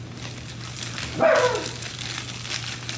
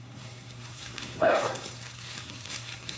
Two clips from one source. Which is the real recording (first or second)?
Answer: first